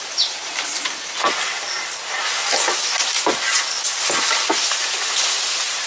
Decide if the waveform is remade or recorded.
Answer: recorded